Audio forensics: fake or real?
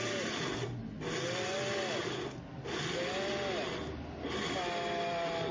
real